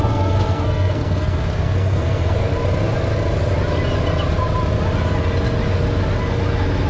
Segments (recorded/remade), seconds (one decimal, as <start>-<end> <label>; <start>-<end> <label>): 0.0-2.5 remade; 2.5-6.9 recorded